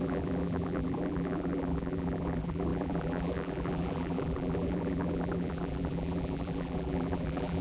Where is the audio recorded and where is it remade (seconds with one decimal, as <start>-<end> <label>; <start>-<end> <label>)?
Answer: 0.0-7.6 remade